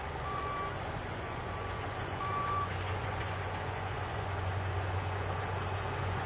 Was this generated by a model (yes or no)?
yes